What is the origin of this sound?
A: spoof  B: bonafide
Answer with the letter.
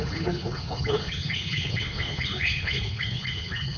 A